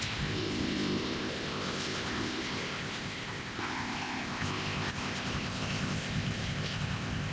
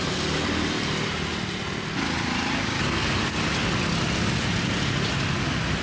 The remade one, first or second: first